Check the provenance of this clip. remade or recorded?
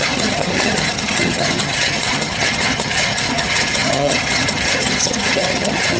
remade